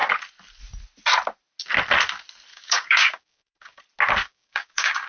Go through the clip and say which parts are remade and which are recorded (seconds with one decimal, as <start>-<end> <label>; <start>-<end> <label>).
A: 0.0-2.5 recorded; 2.5-3.8 remade; 3.8-4.3 recorded; 4.3-5.1 remade